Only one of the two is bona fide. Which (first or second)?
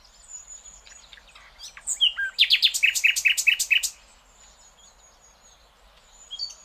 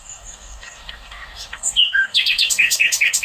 first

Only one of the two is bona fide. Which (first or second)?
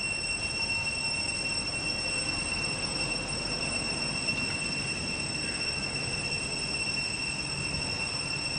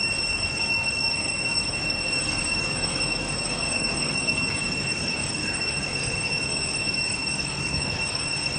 first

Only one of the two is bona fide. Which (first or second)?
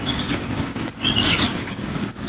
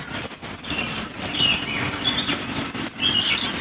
second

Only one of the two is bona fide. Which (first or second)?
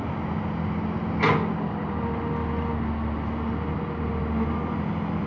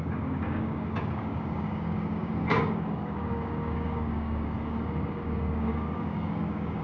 first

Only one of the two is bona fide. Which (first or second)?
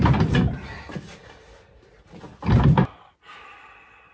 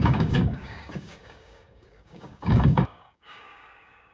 first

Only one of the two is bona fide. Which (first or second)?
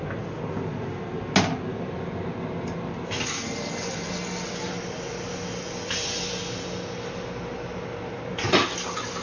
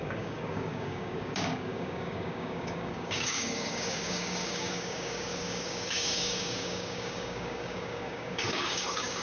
first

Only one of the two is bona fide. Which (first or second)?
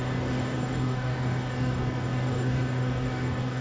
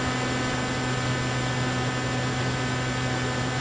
second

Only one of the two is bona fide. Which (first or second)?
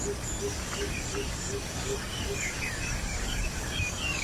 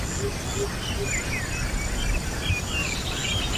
second